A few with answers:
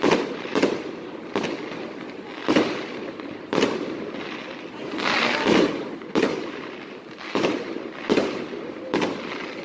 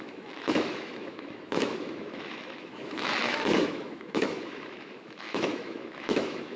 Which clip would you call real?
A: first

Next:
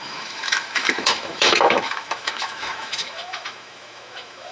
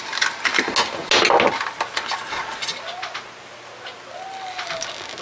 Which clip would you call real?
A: second